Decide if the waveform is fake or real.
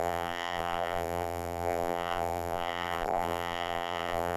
fake